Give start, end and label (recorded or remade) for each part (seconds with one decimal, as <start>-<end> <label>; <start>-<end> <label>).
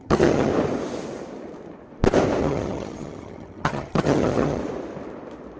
0.0-0.5 remade; 0.5-2.4 recorded; 2.4-4.6 remade; 4.6-5.6 recorded